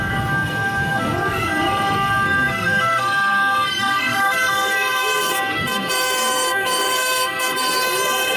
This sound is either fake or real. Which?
fake